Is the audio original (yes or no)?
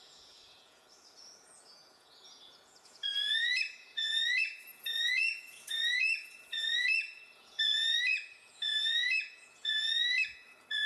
no